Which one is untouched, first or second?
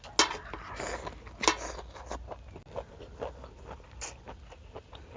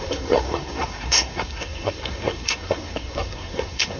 first